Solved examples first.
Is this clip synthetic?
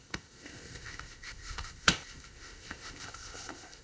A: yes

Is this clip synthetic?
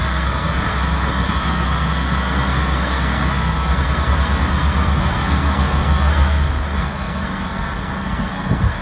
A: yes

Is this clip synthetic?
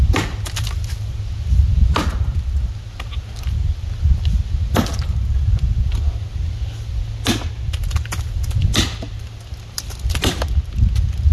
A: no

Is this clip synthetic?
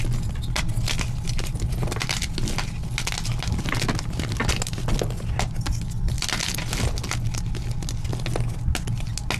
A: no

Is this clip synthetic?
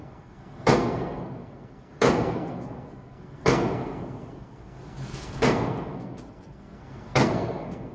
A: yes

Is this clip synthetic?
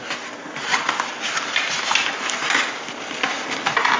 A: no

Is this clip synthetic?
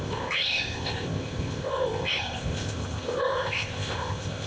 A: yes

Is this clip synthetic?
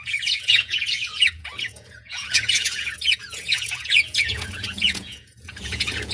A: yes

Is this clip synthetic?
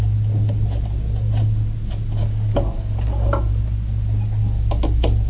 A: no